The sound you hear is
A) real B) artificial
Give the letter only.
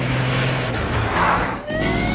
B